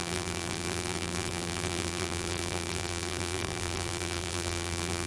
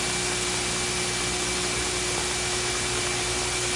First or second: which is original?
second